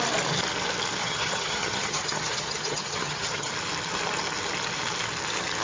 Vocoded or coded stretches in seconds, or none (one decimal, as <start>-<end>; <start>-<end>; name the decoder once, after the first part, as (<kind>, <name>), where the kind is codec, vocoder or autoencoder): 1.0-3.5 (vocoder, HiFi-GAN)